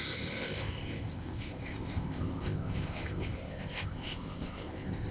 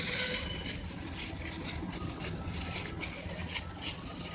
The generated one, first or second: first